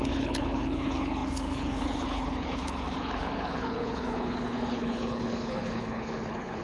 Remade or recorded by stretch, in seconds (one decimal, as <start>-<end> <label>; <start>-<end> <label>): 0.0-6.6 remade